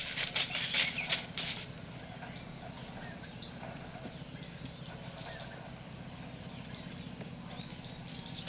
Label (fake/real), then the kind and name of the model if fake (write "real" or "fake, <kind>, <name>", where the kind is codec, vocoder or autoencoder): real